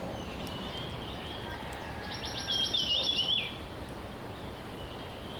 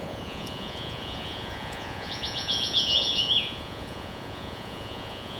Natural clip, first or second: first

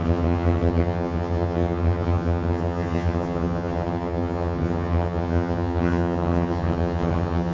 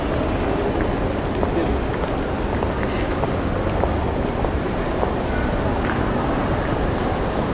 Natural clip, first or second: second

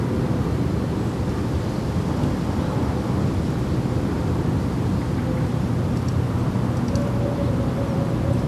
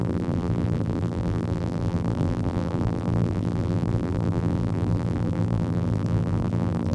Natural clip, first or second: first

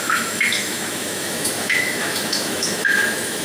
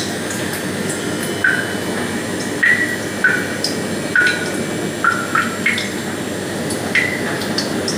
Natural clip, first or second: second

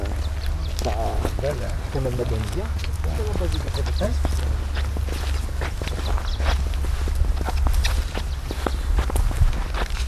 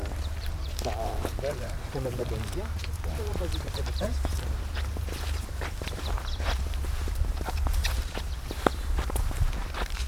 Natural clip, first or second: first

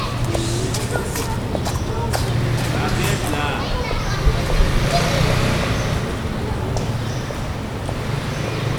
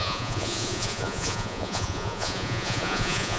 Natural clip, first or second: first